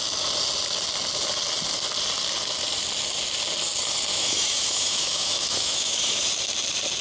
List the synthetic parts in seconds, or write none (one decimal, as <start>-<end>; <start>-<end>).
4.1-6.3